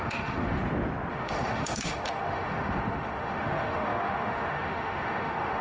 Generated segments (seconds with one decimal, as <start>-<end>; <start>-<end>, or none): 0.0-0.6; 1.1-5.6

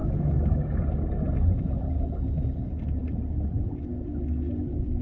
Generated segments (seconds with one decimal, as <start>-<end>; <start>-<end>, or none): 0.0-0.8